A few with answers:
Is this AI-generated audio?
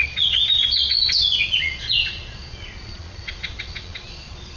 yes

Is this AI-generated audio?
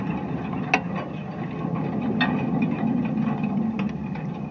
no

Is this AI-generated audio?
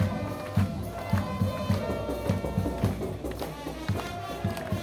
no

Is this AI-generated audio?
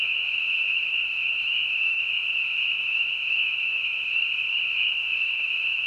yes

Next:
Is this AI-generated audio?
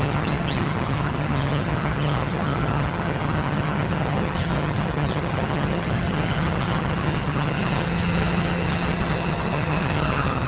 yes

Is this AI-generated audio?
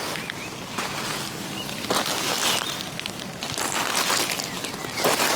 yes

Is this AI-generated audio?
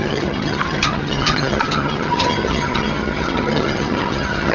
yes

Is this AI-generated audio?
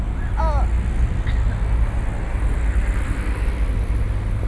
no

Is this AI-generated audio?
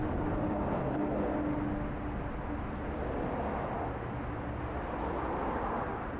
no